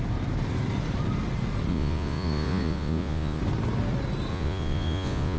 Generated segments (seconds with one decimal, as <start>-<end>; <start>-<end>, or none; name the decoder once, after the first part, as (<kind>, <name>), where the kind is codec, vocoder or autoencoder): 1.7-3.4 (vocoder, Vocos); 4.3-5.4

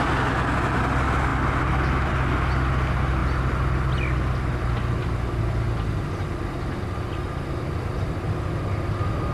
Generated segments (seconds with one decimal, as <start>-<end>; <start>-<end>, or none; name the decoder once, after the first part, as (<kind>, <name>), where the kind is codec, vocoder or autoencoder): none

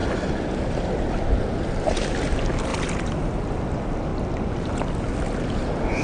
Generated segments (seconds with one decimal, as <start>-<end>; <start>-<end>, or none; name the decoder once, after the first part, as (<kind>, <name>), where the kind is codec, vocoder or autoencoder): none

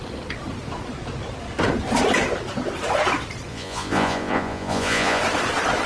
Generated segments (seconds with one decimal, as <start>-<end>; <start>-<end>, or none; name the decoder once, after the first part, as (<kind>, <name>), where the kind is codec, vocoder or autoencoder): 3.5-5.2 (vocoder, Vocos)

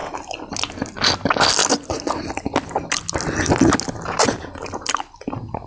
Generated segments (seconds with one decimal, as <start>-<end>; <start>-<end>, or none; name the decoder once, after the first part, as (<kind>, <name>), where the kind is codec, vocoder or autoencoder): none

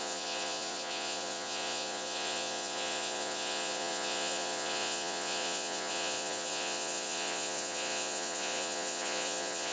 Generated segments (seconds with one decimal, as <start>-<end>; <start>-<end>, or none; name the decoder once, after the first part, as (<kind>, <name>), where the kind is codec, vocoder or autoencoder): 0.0-9.7 (vocoder, Vocos)

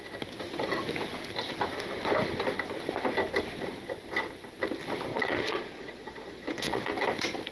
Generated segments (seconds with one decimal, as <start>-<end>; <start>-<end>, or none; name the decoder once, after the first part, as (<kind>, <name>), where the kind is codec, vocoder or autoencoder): 5.1-6.9 (vocoder, Vocos)

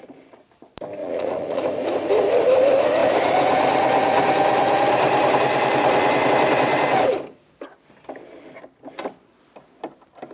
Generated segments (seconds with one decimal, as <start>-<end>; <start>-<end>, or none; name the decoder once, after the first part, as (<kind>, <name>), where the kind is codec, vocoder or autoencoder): 1.0-1.6 (vocoder, Vocos)